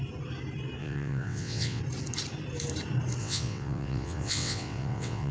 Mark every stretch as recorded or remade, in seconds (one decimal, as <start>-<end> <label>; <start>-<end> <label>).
0.0-0.8 recorded; 0.8-1.8 remade; 1.8-3.2 recorded; 3.2-5.3 remade

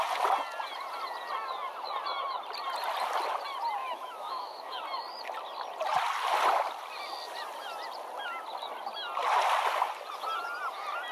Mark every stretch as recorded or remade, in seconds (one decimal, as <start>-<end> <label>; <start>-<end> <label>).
0.0-3.8 recorded; 3.8-4.8 remade; 4.8-11.1 recorded

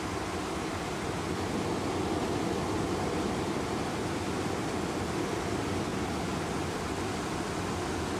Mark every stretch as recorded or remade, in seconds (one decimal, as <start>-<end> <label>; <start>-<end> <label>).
0.0-8.2 recorded

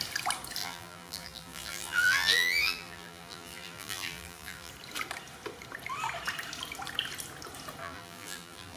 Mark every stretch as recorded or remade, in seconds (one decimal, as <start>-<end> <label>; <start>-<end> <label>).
0.0-0.6 recorded; 0.6-4.7 remade; 4.7-7.8 recorded; 7.8-8.8 remade

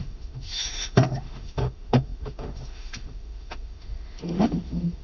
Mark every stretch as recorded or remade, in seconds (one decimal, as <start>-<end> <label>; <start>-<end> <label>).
0.0-5.0 remade

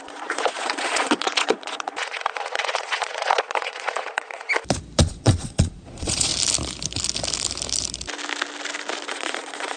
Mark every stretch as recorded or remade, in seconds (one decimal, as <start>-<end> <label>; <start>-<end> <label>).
0.0-4.5 remade; 4.5-5.0 recorded; 5.0-6.3 remade; 6.3-9.1 recorded; 9.1-9.8 remade

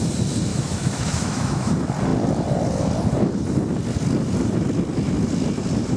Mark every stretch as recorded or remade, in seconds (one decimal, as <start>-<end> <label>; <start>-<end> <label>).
0.0-0.5 recorded; 0.5-1.7 remade; 1.7-6.0 recorded